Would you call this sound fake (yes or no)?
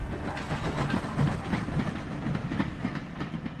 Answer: no